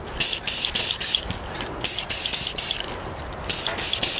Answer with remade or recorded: recorded